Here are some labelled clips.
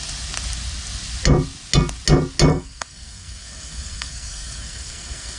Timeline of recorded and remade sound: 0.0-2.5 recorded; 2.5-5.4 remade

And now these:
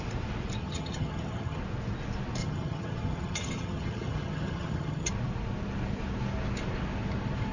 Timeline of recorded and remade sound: 0.0-0.6 recorded; 0.6-1.6 remade; 1.6-2.4 recorded; 2.4-5.1 remade; 5.1-7.5 recorded

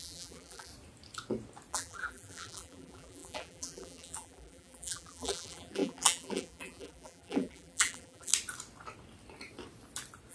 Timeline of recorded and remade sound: 0.0-0.7 remade; 0.7-1.7 recorded; 1.7-8.3 remade; 8.3-10.3 recorded

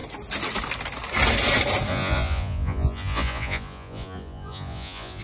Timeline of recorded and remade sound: 0.0-1.9 recorded; 1.9-5.2 remade

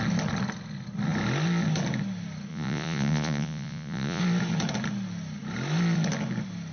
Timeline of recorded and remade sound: 0.0-2.5 recorded; 2.5-4.2 remade; 4.2-6.7 recorded

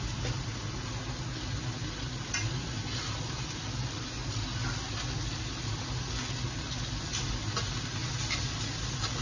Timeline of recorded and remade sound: 0.0-9.2 recorded

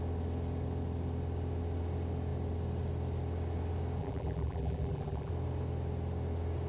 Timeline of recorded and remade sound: 0.0-4.0 recorded; 4.0-5.3 remade; 5.3-6.7 recorded

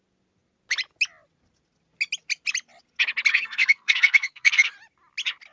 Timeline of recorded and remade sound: 0.0-3.3 recorded; 3.3-4.7 remade; 4.7-5.5 recorded